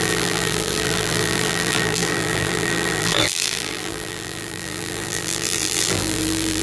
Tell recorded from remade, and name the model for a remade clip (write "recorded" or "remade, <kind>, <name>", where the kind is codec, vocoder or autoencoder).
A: remade, vocoder, BigVGAN v2